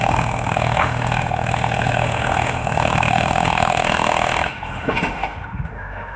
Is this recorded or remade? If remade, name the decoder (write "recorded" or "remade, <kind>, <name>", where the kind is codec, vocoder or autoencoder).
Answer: remade, autoencoder, DAC-VAE